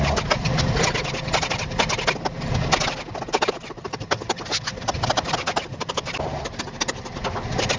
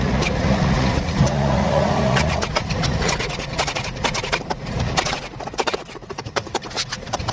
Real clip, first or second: first